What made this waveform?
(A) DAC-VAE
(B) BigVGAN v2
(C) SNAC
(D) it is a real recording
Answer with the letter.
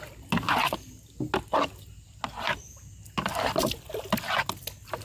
D